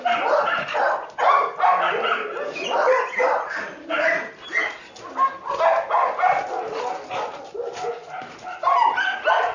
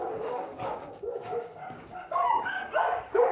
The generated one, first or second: second